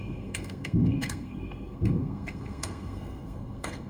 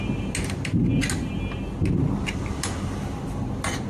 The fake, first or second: first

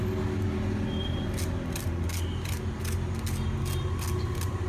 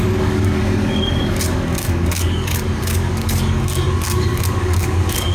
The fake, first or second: second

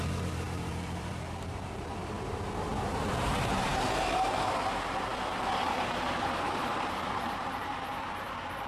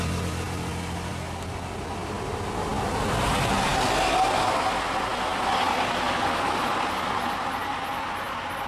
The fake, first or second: first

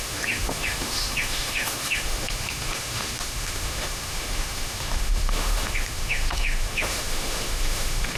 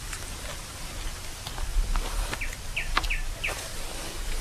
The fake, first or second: first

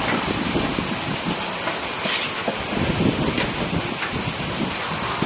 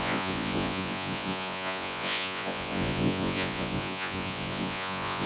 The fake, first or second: second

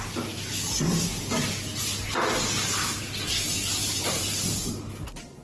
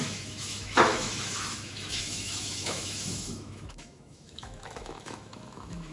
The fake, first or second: second